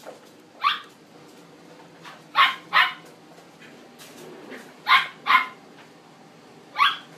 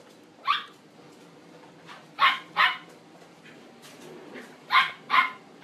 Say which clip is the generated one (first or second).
second